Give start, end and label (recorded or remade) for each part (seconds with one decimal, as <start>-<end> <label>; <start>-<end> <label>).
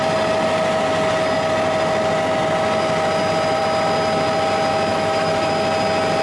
0.0-4.9 recorded; 4.9-5.5 remade; 5.5-6.2 recorded